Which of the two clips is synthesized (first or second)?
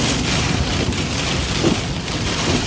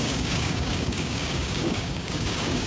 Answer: second